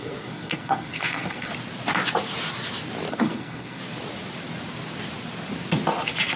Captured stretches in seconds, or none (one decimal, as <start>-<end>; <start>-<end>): 1.5-3.1; 3.8-6.4